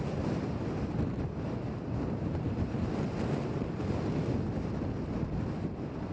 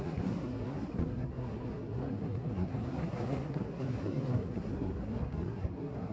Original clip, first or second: first